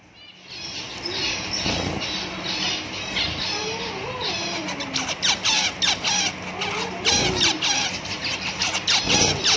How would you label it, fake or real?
real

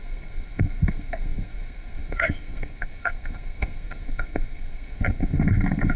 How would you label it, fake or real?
fake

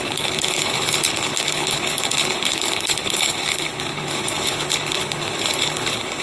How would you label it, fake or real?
fake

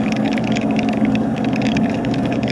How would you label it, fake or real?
fake